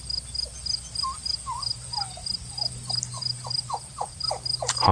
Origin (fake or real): real